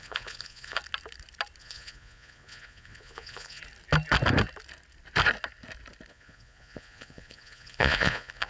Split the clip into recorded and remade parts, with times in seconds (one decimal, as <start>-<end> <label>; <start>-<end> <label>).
0.0-0.8 remade; 0.8-1.6 recorded; 1.6-3.6 remade; 3.6-6.1 recorded; 6.1-8.5 remade